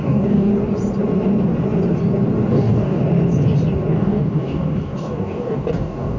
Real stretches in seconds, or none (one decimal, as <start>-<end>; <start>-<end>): 0.5-2.5; 3.0-3.9